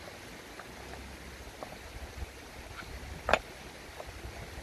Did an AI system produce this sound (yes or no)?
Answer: no